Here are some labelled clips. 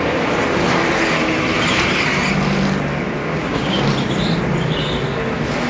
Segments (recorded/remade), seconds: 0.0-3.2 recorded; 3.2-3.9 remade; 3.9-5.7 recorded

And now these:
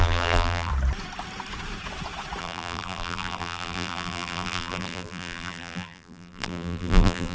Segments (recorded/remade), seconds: 0.0-0.7 remade; 0.7-2.4 recorded; 2.4-7.3 remade

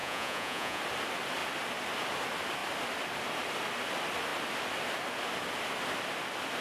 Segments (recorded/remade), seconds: 0.0-0.8 remade; 0.8-6.6 recorded

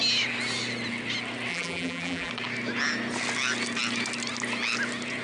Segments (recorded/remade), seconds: 0.0-1.5 recorded; 1.5-2.3 remade; 2.3-5.2 recorded

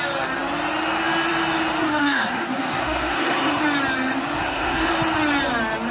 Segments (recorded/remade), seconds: 0.0-1.8 recorded; 1.8-3.6 remade; 3.6-4.4 recorded; 4.4-4.9 remade; 4.9-5.9 recorded